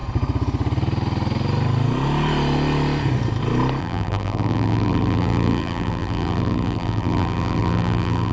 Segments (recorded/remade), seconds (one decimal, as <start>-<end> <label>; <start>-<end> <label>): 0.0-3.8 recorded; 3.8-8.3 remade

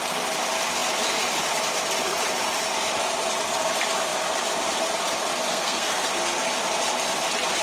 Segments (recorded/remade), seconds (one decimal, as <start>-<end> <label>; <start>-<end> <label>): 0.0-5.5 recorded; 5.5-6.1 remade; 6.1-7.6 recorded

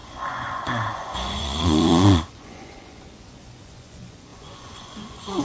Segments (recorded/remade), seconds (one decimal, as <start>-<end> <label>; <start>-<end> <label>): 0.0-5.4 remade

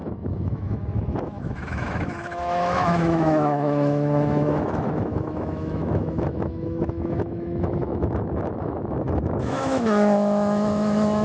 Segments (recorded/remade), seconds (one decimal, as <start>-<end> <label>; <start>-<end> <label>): 0.0-11.2 remade

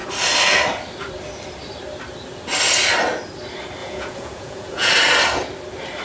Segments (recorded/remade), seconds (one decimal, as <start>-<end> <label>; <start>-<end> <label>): 0.0-3.8 recorded; 3.8-4.9 remade; 4.9-6.0 recorded